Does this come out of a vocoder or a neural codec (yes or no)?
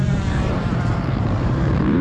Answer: yes